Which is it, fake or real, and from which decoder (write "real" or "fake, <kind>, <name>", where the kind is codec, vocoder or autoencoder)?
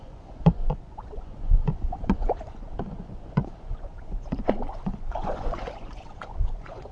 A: fake, vocoder, Vocos